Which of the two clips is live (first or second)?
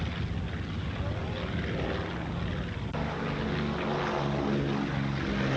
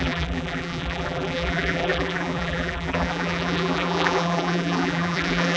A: first